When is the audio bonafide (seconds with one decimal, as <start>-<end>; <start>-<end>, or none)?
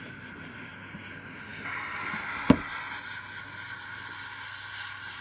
0.0-5.2